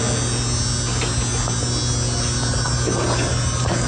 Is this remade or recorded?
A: recorded